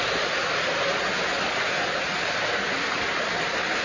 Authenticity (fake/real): real